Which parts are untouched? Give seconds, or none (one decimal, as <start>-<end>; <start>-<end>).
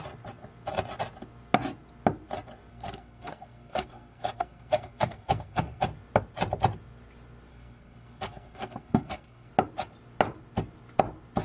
0.0-2.7; 5.8-7.5; 9.5-11.4